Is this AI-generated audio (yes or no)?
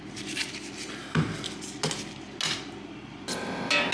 no